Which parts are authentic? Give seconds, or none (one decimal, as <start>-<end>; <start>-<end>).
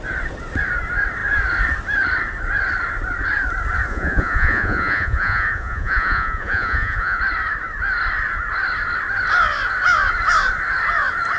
0.0-3.9; 7.2-11.4